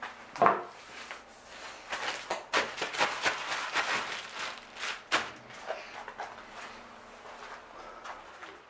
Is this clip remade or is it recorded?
recorded